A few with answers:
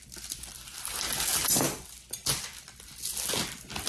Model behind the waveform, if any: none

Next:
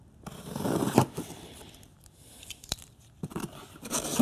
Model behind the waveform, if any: vocoder, BigVGAN v2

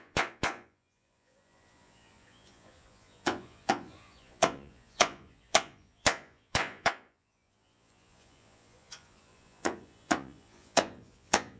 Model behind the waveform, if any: vocoder, Vocos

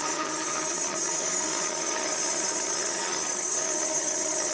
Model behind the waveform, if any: vocoder, HiFi-GAN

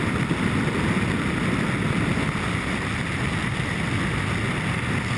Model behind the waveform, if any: none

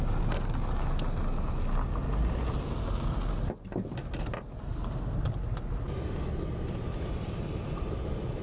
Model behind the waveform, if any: none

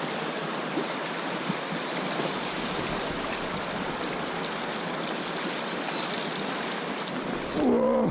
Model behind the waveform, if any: none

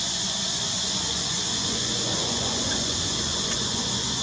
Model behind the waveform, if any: vocoder, Vocos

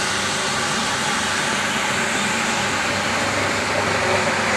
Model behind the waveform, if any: none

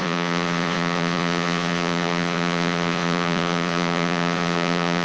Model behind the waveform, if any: vocoder, Vocos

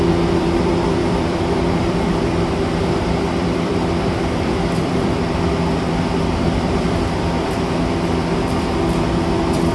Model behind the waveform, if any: vocoder, BigVGAN v2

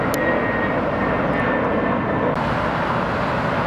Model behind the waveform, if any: none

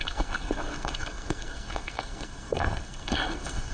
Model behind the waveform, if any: codec, SNAC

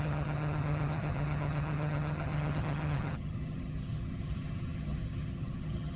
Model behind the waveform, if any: vocoder, HiFi-GAN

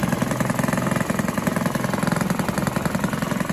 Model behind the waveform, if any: none